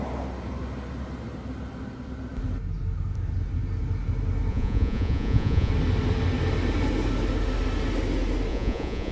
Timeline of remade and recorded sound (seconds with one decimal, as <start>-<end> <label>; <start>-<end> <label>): 0.0-4.5 recorded; 4.5-5.7 remade; 5.7-8.5 recorded; 8.5-9.1 remade